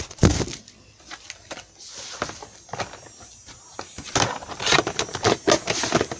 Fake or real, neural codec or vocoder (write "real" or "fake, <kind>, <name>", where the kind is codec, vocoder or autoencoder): real